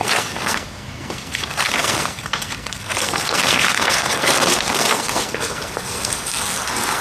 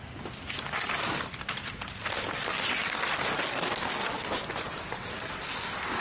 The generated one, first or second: first